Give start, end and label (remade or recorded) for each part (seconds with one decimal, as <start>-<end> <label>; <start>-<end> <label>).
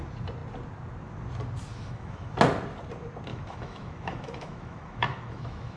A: 0.0-1.7 recorded; 1.7-2.3 remade; 2.3-3.3 recorded; 3.3-5.8 remade